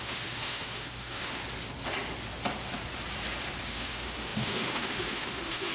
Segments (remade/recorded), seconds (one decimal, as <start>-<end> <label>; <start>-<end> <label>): 0.0-1.4 remade; 1.4-3.7 recorded; 3.7-5.7 remade

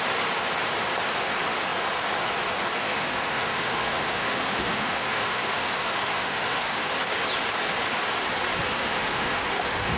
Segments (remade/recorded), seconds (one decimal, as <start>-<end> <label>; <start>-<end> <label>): 0.0-2.8 recorded; 2.8-6.9 remade; 6.9-8.7 recorded; 8.7-10.0 remade

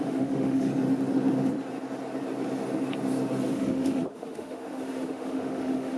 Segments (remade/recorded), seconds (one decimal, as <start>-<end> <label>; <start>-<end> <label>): 0.0-0.7 remade; 0.7-3.5 recorded; 3.5-6.0 remade